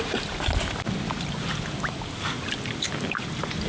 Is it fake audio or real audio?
real